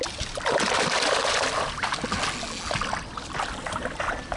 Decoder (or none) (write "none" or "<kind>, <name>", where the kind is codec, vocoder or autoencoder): none